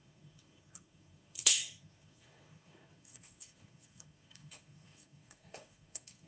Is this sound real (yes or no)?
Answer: no